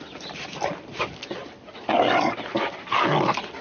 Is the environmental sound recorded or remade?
recorded